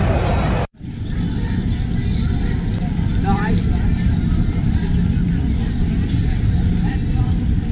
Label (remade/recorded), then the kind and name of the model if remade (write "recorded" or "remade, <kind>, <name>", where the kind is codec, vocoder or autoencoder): remade, vocoder, BigVGAN v2